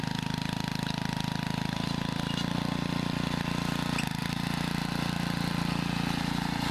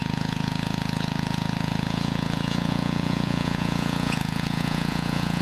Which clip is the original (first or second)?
first